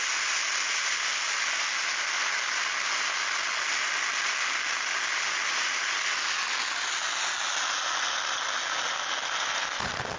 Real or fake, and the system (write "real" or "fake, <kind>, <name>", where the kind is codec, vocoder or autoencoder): real